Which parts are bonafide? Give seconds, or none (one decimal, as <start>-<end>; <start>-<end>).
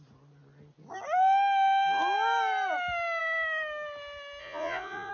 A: 0.0-4.4